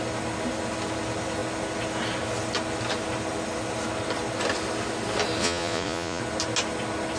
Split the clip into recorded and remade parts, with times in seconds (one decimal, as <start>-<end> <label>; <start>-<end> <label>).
0.0-5.4 recorded; 5.4-6.2 remade; 6.2-7.2 recorded